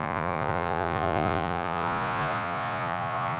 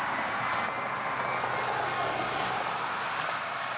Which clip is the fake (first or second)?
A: first